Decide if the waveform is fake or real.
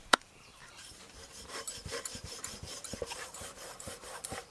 fake